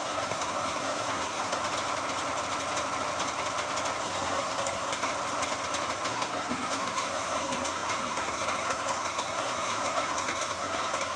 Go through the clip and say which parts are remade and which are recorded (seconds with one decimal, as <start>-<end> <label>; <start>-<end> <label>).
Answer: 0.0-1.6 remade; 1.6-4.0 recorded; 4.0-5.1 remade; 5.1-6.1 recorded; 6.1-11.2 remade